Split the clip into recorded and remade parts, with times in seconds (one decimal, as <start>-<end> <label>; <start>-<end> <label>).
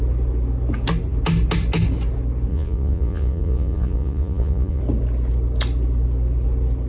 0.0-2.5 recorded; 2.5-4.8 remade; 4.8-6.9 recorded